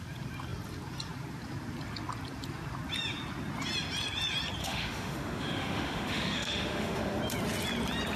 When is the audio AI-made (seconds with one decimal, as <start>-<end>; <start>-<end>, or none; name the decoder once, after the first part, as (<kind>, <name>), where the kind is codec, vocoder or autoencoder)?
4.6-7.2 (autoencoder, DAC-VAE)

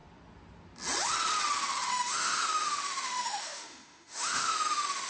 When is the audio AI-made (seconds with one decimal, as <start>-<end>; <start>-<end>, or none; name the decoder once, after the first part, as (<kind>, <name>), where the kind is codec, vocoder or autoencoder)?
1.9-5.1 (autoencoder, DAC-VAE)

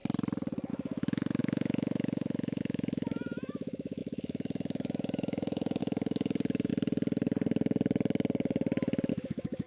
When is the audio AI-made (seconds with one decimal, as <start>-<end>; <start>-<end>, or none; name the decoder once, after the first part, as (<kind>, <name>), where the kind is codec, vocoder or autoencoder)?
0.7-6.7 (autoencoder, DAC-VAE); 9.1-9.7

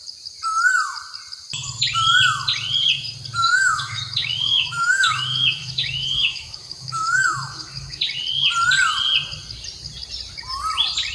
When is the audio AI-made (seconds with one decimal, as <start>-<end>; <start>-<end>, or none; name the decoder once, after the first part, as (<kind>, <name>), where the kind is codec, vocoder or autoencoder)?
3.4-8.0 (autoencoder, DAC-VAE)

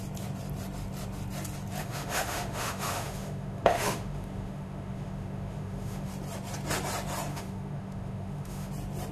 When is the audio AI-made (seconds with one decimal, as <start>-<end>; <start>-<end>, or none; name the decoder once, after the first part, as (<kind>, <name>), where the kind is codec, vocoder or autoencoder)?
1.8-6.1 (autoencoder, DAC-VAE); 7.3-8.7

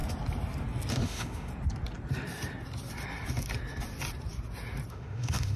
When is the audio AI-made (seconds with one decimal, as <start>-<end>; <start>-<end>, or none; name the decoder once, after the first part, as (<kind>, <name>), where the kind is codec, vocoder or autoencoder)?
0.9-1.5 (autoencoder, DAC-VAE); 4.9-5.6